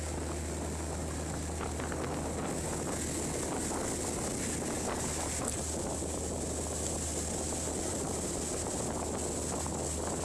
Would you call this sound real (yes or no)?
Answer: yes